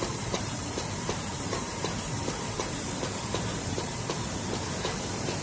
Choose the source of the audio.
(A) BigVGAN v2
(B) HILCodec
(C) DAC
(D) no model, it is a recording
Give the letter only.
A